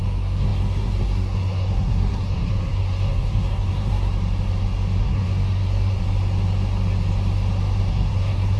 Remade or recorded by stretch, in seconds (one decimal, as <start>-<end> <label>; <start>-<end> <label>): 0.0-4.1 remade; 4.1-5.0 recorded; 5.0-6.0 remade; 6.0-7.9 recorded; 7.9-8.6 remade